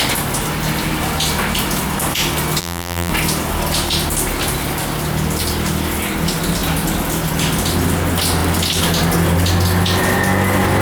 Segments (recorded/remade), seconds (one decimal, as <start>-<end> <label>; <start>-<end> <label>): 0.0-2.6 recorded; 2.6-3.1 remade; 3.1-10.8 recorded